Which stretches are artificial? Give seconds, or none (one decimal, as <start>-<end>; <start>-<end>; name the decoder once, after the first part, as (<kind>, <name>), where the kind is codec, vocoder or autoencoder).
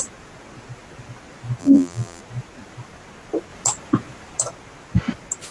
1.6-2.2 (vocoder, BigVGAN v2)